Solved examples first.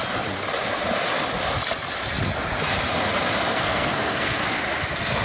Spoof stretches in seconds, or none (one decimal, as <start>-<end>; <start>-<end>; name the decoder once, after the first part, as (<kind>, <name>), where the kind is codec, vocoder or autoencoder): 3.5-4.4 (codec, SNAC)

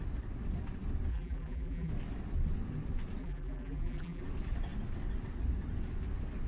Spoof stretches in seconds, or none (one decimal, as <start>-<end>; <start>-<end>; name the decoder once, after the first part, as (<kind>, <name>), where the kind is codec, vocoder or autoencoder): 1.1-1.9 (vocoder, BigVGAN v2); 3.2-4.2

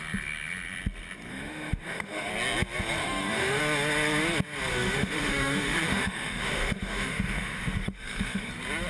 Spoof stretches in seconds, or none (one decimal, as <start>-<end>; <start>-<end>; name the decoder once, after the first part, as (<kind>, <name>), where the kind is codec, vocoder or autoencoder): 1.3-2.3 (autoencoder, DAC-VAE); 3.0-3.6; 4.7-8.5

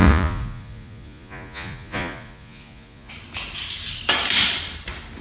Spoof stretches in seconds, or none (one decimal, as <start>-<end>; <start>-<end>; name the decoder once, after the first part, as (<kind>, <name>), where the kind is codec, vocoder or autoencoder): 0.0-3.1 (vocoder, Vocos)